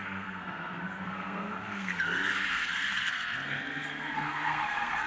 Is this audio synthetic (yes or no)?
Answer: yes